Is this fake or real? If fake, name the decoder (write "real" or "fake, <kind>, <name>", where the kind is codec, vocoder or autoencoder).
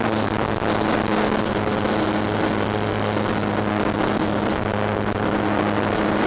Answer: real